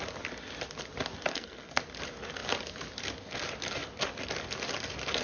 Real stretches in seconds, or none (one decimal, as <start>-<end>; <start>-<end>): 0.0-1.3; 1.8-5.2